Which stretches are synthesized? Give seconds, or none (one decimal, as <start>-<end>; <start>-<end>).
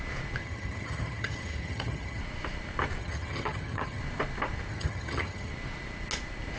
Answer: 0.4-2.2; 3.0-4.0; 4.7-5.5